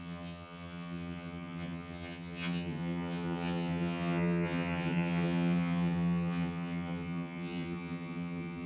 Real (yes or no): no